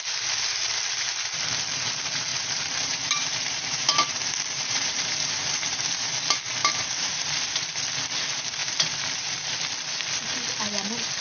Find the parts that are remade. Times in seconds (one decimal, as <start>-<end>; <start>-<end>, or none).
2.3-6.1; 6.6-7.7; 8.6-9.6